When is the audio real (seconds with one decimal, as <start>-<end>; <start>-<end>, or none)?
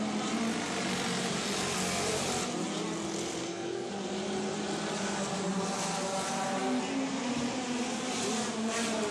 0.0-3.4; 3.9-9.1